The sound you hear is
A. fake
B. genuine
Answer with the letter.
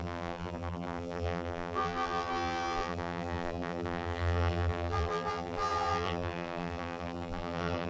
A